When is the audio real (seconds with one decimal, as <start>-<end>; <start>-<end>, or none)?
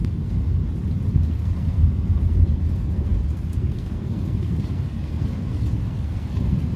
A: 0.6-1.1